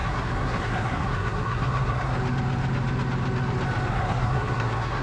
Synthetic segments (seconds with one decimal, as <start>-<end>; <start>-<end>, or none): 0.0-2.1; 3.9-5.0